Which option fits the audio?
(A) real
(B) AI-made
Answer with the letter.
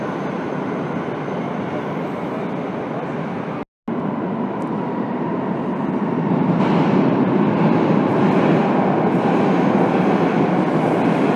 A